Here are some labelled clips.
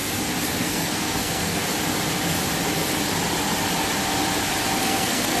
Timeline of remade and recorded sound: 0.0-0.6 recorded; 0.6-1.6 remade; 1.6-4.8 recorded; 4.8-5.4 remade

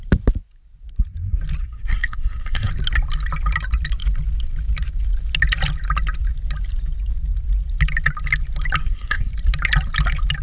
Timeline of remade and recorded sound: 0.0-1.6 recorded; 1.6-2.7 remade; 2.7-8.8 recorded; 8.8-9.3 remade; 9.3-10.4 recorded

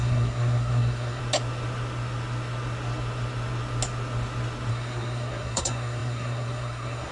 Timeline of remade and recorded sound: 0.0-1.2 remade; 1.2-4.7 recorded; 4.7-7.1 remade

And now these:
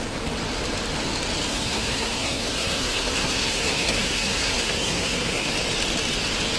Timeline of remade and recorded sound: 0.0-1.5 recorded; 1.5-5.5 remade; 5.5-6.6 recorded

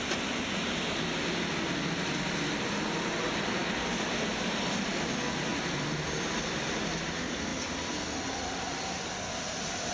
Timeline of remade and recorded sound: 0.0-9.9 recorded

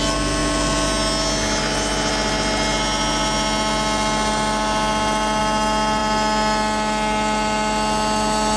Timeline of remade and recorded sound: 0.0-8.6 recorded

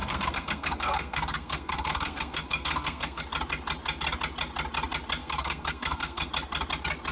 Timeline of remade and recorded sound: 0.0-3.2 remade; 3.2-5.2 recorded; 5.2-6.3 remade; 6.3-7.1 recorded

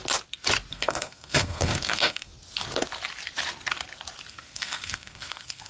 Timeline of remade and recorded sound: 0.0-0.7 recorded; 0.7-2.3 remade; 2.3-4.3 recorded; 4.3-5.7 remade